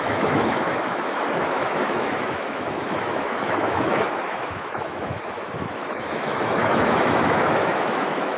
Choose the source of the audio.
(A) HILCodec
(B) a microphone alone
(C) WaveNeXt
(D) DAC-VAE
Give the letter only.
D